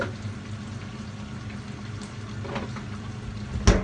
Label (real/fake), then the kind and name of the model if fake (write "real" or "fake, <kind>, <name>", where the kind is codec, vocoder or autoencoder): real